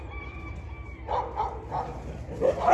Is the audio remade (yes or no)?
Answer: no